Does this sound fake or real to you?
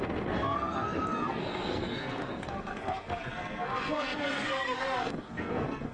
fake